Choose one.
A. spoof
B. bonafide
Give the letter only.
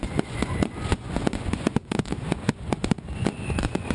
A